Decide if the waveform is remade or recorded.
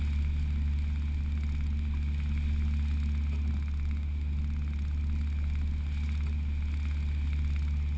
recorded